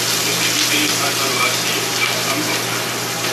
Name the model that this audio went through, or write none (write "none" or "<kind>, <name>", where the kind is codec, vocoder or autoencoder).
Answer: none